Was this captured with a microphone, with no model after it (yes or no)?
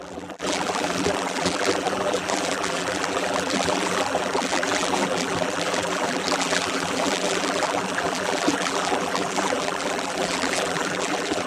no